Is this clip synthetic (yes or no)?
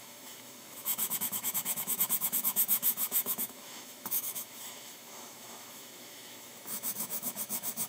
yes